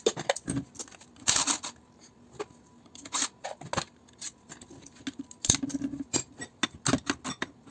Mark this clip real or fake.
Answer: real